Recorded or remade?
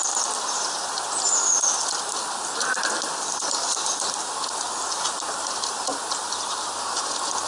recorded